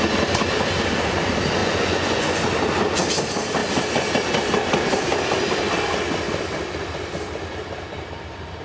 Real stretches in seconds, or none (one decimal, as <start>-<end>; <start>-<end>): 0.0-1.6; 2.4-8.6